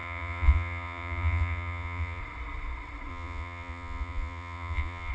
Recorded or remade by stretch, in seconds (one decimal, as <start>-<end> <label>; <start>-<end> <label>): 0.0-2.2 remade; 2.2-3.1 recorded; 3.1-5.1 remade